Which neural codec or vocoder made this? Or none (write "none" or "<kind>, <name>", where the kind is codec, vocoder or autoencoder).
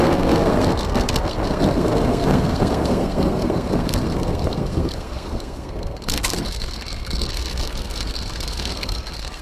codec, SNAC